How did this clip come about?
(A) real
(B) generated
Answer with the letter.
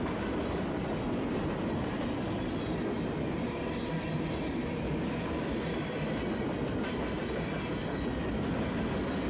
A